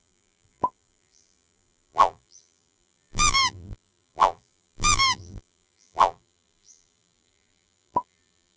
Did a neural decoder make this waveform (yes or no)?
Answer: yes